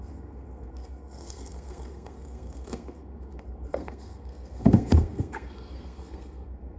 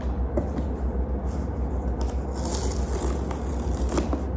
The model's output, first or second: first